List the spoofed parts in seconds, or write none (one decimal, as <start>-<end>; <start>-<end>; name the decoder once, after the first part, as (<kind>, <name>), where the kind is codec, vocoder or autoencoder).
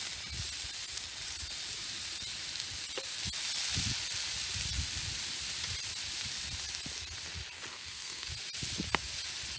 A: 7.7-8.3 (codec, SNAC)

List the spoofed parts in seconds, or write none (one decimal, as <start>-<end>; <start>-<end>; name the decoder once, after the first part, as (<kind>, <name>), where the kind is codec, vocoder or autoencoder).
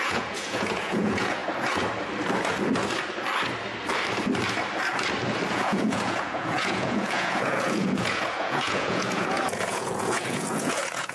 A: 0.0-1.4 (vocoder, Vocos); 5.5-11.1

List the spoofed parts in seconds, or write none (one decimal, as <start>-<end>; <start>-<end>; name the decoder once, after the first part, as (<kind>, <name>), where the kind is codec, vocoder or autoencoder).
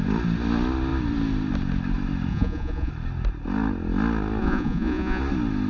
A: 2.3-2.9 (vocoder, Vocos); 4.4-5.2